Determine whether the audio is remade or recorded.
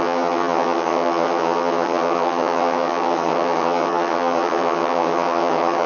remade